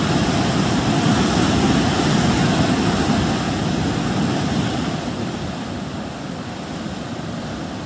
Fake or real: real